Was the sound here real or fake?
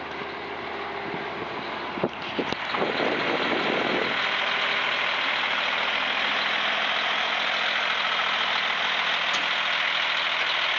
real